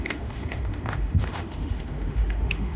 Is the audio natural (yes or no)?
no